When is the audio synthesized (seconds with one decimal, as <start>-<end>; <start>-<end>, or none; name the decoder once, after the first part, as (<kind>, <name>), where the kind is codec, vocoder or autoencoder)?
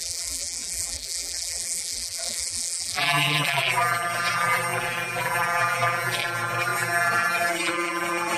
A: 0.0-8.4 (vocoder, BigVGAN v2)